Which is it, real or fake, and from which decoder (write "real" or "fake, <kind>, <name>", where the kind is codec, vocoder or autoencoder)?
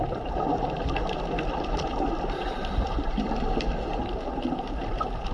fake, vocoder, BigVGAN v2